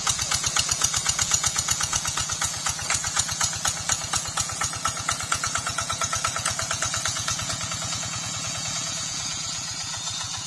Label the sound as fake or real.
fake